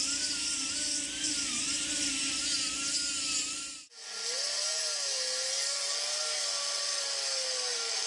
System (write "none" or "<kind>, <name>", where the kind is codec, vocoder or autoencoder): none